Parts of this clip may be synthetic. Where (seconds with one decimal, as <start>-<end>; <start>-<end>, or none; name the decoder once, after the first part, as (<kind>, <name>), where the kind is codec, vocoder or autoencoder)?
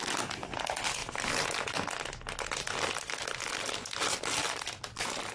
none